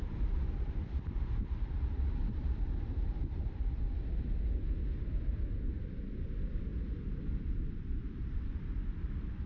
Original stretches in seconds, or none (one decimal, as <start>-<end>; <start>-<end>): 4.5-9.5